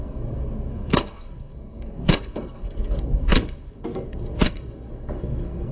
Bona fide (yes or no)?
no